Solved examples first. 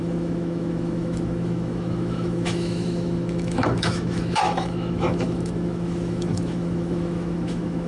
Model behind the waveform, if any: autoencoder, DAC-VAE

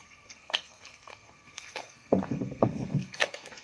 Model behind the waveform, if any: codec, SNAC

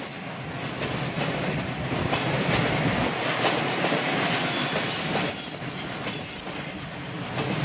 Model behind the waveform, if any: none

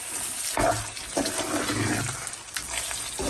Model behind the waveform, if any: none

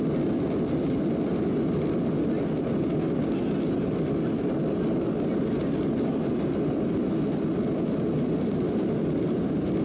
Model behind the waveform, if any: none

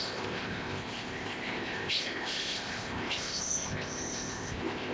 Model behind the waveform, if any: codec, ZipCodec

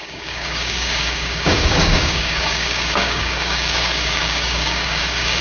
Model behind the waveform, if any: codec, DAC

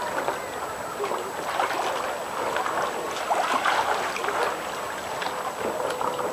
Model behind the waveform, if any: none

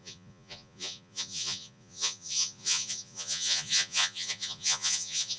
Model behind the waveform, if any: vocoder, Vocos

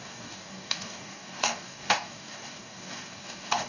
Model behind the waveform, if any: codec, DAC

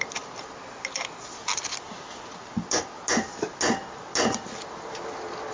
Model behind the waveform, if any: none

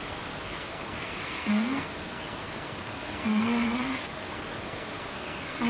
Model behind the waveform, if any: codec, SNAC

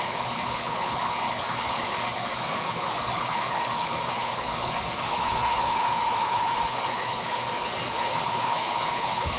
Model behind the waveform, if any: codec, HILCodec